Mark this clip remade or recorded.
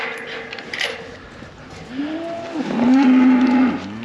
recorded